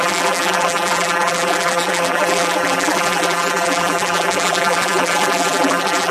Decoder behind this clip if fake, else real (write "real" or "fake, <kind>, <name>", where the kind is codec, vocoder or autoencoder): fake, vocoder, BigVGAN v2